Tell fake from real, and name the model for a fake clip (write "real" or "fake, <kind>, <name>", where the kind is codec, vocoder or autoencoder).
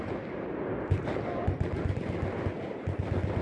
real